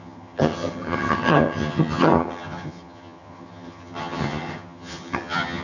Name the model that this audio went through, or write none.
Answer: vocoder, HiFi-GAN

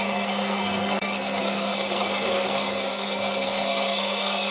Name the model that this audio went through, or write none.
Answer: codec, SNAC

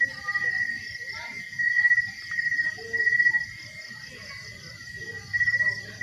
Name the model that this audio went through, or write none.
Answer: none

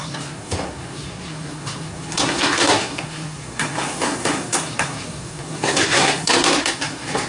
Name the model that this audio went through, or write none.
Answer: codec, SNAC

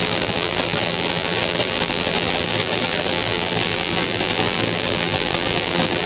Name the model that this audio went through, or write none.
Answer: vocoder, BigVGAN v2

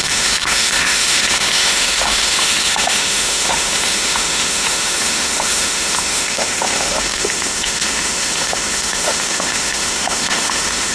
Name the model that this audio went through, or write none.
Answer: autoencoder, DAC-VAE